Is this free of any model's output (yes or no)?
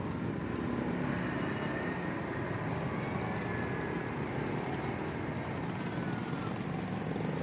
no